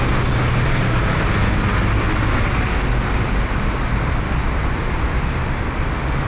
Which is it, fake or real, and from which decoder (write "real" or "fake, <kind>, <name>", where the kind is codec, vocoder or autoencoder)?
real